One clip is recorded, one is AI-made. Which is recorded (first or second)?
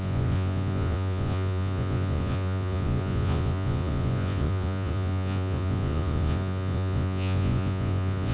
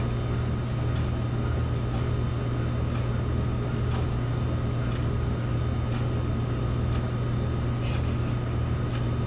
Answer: second